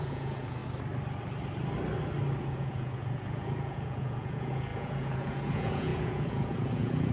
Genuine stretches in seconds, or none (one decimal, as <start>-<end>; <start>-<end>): 0.6-2.4